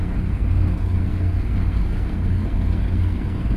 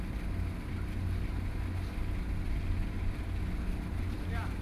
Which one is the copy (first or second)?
first